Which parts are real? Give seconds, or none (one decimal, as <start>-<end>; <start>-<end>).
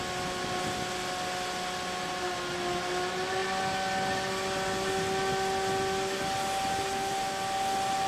0.0-8.1